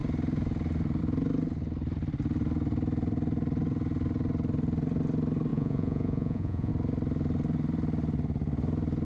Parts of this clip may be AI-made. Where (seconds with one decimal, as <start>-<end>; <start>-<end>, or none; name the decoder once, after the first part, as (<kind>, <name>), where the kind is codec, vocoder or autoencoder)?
5.5-6.7 (vocoder, Vocos)

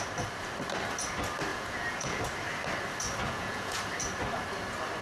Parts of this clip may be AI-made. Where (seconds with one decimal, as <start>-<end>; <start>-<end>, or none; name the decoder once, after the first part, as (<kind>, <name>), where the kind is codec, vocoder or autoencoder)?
1.5-2.2 (vocoder, Vocos); 3.2-3.8

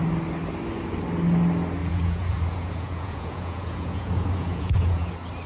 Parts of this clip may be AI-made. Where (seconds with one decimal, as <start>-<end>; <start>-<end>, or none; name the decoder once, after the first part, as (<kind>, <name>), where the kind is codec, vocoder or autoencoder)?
1.8-5.1 (vocoder, Vocos)

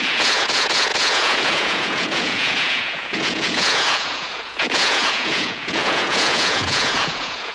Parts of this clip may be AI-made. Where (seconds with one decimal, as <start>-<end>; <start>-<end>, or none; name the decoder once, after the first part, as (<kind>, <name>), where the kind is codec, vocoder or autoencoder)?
0.0-7.5 (vocoder, Vocos)

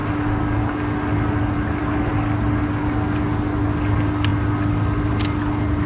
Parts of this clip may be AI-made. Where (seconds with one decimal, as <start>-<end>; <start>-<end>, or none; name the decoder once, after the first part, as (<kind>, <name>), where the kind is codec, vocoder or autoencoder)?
none

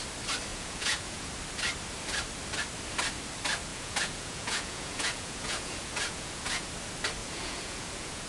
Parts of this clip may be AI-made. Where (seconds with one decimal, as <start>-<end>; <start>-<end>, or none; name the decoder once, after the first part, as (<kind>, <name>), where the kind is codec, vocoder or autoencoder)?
0.5-1.3 (vocoder, Vocos); 3.7-6.7; 7.2-8.3

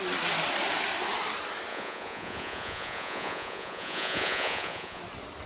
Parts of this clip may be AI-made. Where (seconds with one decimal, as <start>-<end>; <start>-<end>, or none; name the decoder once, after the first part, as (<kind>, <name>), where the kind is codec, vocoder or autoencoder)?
1.7-5.0 (vocoder, Vocos)

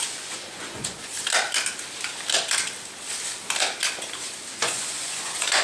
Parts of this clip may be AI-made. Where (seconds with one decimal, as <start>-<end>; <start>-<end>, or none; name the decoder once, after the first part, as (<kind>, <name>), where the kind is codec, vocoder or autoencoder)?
0.0-1.1 (vocoder, Vocos); 4.5-5.6